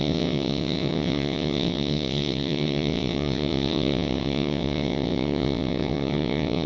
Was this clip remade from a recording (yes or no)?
yes